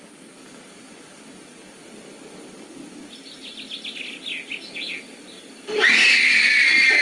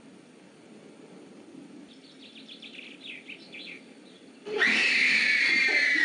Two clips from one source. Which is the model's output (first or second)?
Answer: second